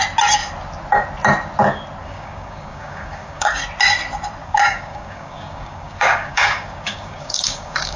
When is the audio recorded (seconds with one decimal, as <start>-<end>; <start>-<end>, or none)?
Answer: 0.0-2.0; 3.6-4.4